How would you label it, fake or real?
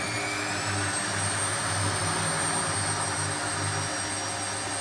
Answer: real